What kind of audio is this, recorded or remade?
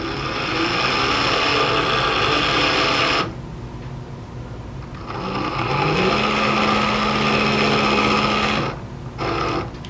recorded